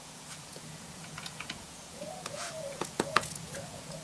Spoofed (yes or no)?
yes